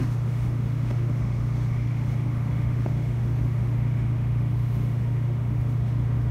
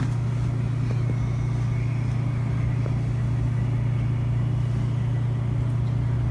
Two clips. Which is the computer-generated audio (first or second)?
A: first